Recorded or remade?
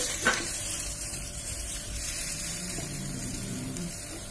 remade